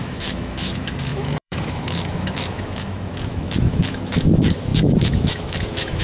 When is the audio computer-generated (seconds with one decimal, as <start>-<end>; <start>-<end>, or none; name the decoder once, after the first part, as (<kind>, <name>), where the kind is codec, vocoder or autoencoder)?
0.0-6.0 (autoencoder, DAC-VAE)